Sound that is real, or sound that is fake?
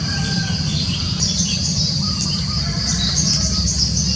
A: real